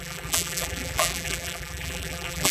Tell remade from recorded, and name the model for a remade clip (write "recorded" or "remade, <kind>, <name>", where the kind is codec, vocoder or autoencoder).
remade, vocoder, BigVGAN v2